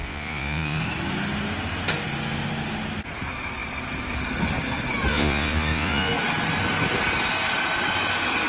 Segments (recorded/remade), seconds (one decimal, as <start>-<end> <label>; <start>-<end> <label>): 0.0-0.8 remade; 0.8-5.1 recorded; 5.1-6.1 remade; 6.1-8.5 recorded